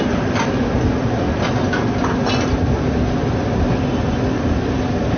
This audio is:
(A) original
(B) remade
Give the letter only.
A